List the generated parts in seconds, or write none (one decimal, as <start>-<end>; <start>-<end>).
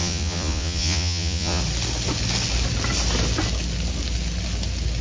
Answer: 0.0-1.6